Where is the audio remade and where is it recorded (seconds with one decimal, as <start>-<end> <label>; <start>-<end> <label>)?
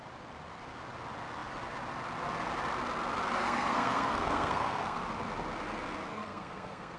0.0-3.4 recorded; 3.4-5.0 remade; 5.0-6.1 recorded; 6.1-7.0 remade